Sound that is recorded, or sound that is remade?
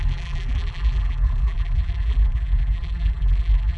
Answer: remade